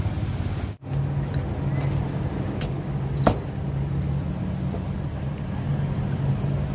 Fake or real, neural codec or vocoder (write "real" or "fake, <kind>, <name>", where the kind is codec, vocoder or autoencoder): real